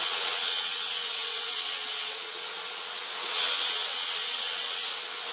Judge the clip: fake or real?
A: fake